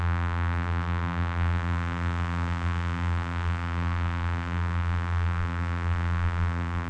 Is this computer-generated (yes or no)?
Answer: yes